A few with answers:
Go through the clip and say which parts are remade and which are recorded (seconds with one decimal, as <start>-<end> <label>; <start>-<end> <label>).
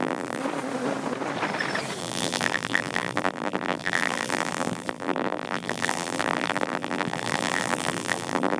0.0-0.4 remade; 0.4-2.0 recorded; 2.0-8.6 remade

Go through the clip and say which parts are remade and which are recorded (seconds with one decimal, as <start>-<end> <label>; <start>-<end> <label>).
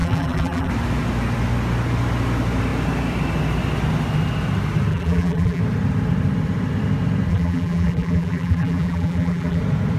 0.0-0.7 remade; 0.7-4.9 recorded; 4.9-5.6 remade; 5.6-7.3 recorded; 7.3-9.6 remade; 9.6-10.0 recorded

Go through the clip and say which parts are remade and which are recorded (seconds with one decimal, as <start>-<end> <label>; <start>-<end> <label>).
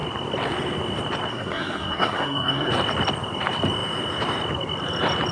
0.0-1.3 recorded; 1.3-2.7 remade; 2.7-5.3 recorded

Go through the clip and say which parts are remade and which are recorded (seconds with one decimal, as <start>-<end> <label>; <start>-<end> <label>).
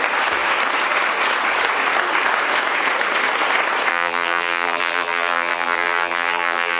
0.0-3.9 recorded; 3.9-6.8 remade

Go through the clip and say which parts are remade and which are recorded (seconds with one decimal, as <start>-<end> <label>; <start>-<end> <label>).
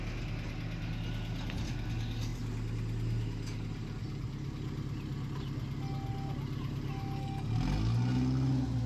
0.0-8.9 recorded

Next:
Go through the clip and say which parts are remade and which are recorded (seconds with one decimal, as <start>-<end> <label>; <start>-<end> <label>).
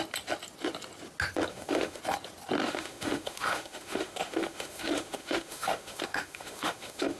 0.0-1.5 recorded; 1.5-2.0 remade; 2.0-2.6 recorded; 2.6-7.2 remade